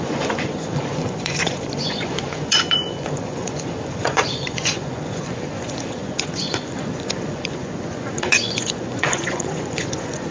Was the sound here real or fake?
fake